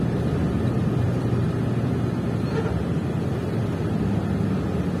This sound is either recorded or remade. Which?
recorded